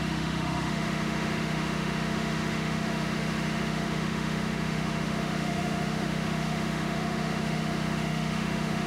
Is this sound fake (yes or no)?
yes